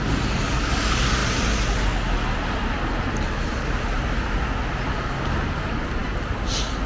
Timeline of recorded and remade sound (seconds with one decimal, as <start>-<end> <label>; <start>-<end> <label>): 0.0-6.9 recorded